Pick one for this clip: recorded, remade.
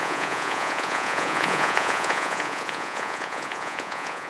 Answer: remade